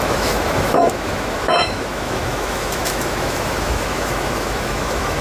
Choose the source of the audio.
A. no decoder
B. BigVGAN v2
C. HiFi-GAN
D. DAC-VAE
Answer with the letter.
D